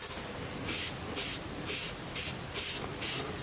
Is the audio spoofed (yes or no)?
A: no